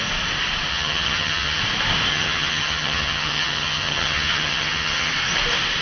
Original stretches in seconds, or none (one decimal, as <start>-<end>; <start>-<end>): 0.0-0.7; 1.6-2.1; 5.1-5.8